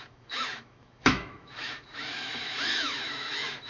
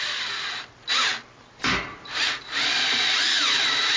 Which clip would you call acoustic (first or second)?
second